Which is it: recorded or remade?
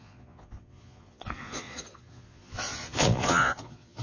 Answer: remade